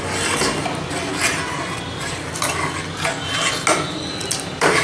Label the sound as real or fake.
real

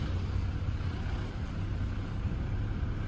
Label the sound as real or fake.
fake